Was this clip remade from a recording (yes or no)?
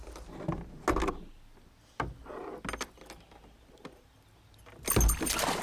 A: no